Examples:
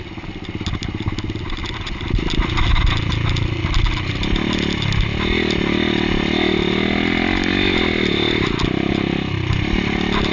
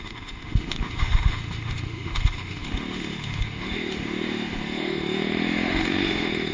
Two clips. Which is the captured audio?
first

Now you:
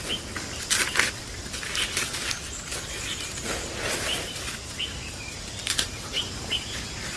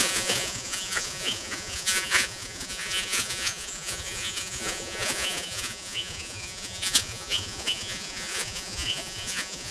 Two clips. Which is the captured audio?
first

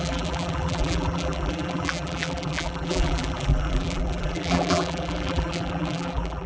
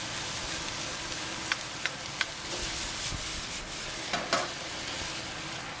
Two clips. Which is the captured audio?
second